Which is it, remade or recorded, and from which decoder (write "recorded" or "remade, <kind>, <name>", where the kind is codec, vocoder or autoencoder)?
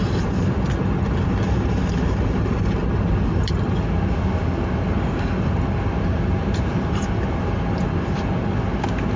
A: recorded